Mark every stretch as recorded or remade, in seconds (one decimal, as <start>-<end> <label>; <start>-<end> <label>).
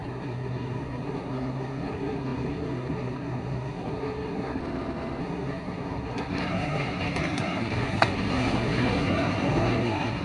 0.0-4.6 remade; 4.6-5.2 recorded; 5.2-10.2 remade